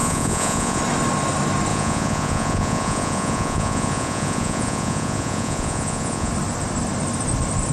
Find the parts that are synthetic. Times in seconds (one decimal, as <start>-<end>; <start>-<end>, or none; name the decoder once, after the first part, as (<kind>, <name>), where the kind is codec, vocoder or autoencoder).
0.0-0.8 (vocoder, Vocos); 1.7-6.3